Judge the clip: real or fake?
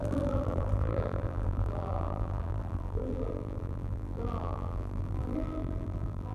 fake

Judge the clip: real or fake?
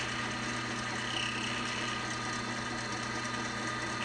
real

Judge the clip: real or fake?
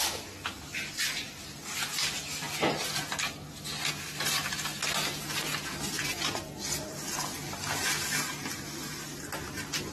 real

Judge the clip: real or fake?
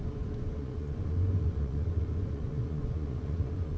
fake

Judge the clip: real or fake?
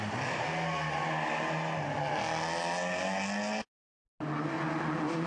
real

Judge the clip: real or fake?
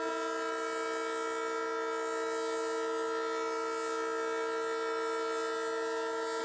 real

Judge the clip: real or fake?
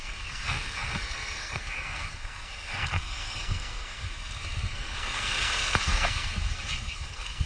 fake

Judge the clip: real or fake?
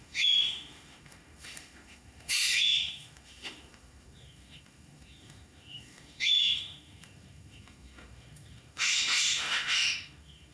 fake